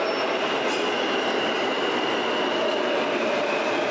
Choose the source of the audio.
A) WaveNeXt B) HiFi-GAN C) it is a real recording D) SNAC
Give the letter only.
C